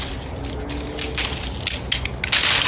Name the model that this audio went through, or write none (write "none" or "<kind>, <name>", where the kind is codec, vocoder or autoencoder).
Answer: none